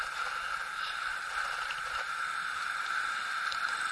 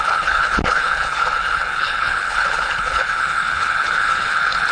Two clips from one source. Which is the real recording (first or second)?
first